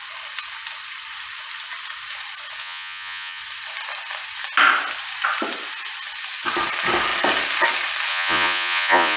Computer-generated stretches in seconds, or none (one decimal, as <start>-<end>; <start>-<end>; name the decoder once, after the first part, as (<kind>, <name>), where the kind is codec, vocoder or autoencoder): 2.6-3.4 (vocoder, Vocos); 8.1-9.2